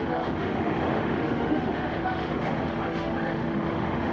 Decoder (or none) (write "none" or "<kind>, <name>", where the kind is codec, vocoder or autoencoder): autoencoder, DAC-VAE